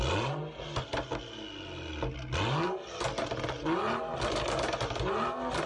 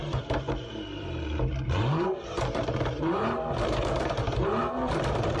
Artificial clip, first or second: second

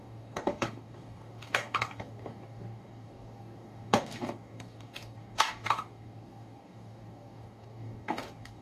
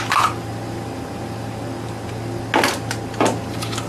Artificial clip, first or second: first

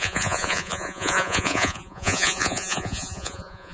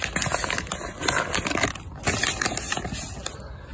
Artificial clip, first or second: first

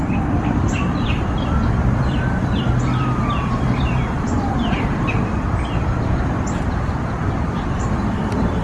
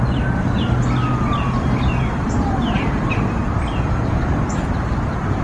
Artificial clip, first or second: first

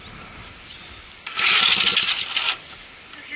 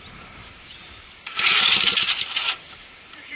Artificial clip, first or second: second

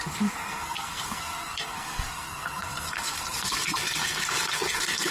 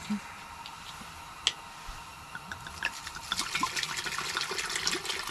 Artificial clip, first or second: first